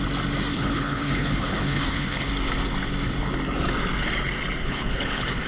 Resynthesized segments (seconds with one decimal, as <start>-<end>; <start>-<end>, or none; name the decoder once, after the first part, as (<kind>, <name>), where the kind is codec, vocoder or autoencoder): 0.5-2.3 (codec, HILCodec); 4.6-5.5